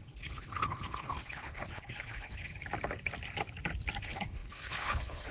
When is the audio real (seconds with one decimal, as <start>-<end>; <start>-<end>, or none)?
2.6-4.0